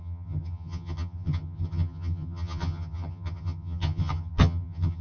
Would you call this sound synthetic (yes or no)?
yes